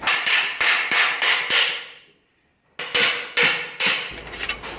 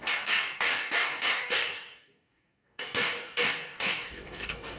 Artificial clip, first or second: second